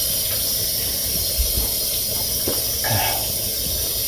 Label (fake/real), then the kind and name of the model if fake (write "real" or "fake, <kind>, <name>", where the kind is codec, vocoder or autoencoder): real